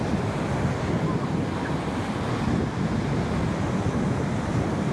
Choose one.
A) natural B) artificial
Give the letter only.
A